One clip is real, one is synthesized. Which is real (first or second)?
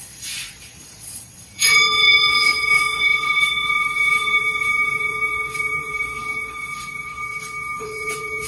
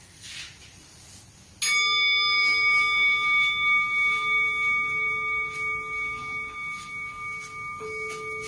second